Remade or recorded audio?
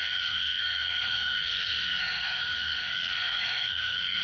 remade